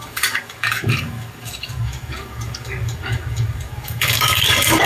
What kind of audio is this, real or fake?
fake